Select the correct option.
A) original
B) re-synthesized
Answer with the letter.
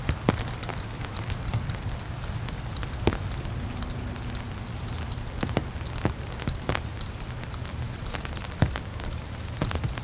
A